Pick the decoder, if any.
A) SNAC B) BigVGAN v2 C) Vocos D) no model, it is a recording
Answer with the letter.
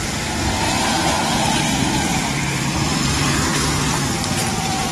B